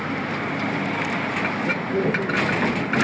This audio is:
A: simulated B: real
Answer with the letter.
B